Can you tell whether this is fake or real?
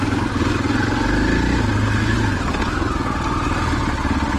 real